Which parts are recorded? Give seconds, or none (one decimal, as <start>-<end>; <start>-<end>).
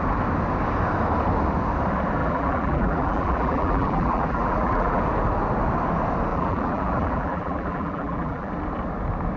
0.0-2.2; 5.0-6.3; 8.5-9.4